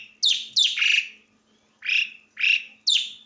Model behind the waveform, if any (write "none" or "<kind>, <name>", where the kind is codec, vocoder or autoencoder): none